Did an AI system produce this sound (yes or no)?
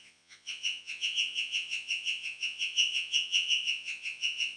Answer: yes